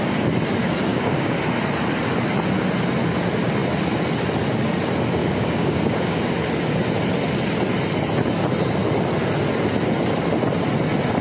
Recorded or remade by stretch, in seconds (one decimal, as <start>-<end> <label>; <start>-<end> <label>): 0.0-0.9 recorded; 0.9-1.4 remade; 1.4-5.2 recorded; 5.2-6.2 remade; 6.2-11.2 recorded